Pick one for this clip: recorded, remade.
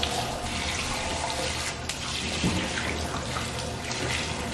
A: recorded